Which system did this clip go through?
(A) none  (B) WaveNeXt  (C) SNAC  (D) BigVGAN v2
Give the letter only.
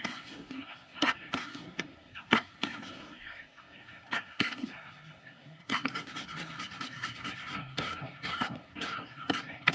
C